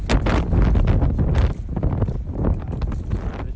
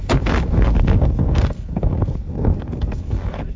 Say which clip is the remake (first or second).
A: second